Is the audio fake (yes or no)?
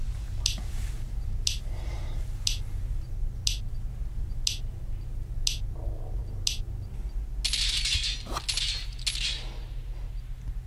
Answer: no